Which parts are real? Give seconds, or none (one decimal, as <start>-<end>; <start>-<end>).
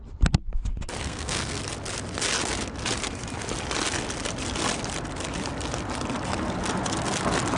0.0-1.0; 1.6-7.6